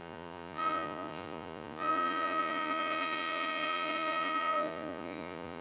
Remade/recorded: remade